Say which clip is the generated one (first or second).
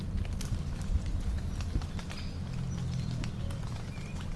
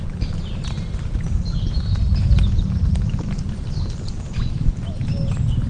second